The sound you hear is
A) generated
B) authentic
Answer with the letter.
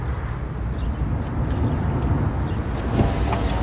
B